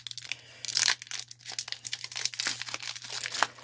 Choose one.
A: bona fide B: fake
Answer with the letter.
A